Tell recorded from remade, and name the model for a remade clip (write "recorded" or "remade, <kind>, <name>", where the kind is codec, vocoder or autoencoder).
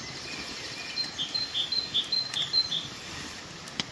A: recorded